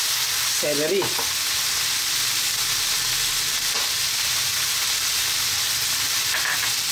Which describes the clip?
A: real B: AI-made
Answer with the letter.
A